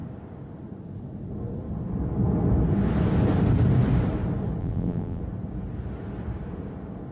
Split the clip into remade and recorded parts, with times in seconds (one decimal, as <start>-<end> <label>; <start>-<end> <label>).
0.0-4.6 recorded; 4.6-5.2 remade; 5.2-7.1 recorded